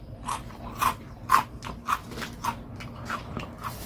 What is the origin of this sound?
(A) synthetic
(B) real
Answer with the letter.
B